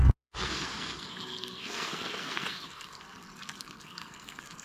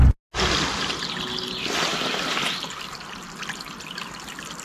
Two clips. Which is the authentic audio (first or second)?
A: second